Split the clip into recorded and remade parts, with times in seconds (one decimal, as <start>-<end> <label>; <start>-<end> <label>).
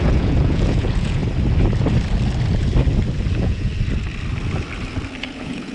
0.0-1.2 remade; 1.2-3.3 recorded; 3.3-3.7 remade; 3.7-5.2 recorded; 5.2-5.7 remade